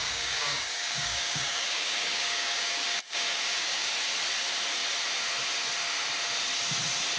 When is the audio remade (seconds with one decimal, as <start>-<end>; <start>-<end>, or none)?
0.0-3.9